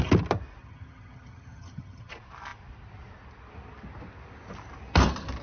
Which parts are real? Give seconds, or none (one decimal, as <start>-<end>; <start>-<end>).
0.0-0.6; 2.1-5.4